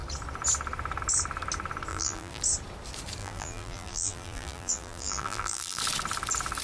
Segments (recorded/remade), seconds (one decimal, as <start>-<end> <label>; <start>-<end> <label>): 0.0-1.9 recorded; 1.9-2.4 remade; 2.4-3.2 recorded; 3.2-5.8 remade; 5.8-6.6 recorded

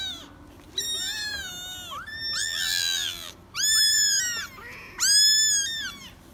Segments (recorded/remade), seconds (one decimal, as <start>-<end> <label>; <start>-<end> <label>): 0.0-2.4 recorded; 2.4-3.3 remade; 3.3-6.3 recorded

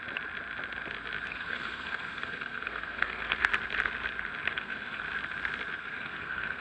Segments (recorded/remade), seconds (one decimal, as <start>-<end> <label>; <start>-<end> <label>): 0.0-1.3 recorded; 1.3-3.5 remade; 3.5-4.5 recorded; 4.5-5.0 remade; 5.0-5.8 recorded; 5.8-6.6 remade

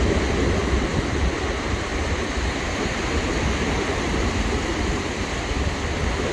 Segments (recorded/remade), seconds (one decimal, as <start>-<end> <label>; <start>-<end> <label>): 0.0-6.3 recorded

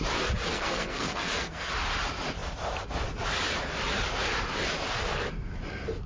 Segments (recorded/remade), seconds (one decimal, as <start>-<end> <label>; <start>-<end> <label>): 0.0-0.5 recorded; 0.5-1.7 remade; 1.7-6.1 recorded